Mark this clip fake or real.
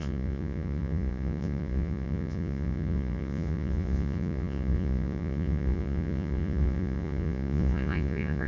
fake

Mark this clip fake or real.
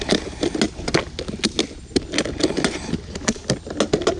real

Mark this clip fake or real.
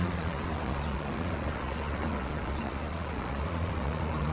fake